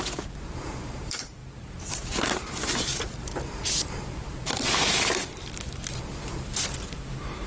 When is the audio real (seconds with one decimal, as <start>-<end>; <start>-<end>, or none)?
6.5-7.5